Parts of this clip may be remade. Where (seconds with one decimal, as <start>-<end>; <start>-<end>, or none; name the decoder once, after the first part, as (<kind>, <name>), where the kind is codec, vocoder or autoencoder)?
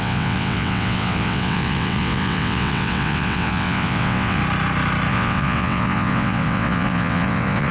0.0-4.4 (vocoder, WaveNeXt); 5.1-7.7